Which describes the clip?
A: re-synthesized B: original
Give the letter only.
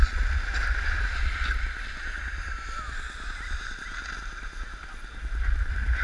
B